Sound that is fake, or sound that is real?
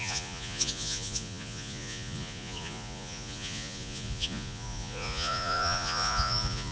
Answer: fake